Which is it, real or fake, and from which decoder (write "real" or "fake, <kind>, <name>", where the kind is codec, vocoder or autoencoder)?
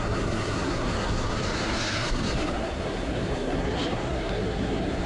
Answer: fake, codec, SNAC